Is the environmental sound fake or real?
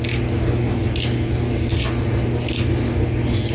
real